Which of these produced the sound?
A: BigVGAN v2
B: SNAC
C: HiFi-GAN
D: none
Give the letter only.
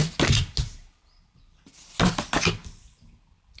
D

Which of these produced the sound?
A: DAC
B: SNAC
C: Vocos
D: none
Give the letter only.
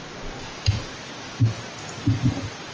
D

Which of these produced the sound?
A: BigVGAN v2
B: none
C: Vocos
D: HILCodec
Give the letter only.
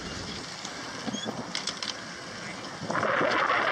B